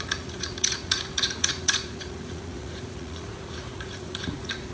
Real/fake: fake